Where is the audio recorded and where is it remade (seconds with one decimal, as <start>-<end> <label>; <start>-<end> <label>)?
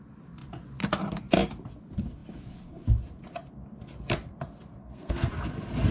0.0-4.8 recorded; 4.8-5.3 remade; 5.3-5.9 recorded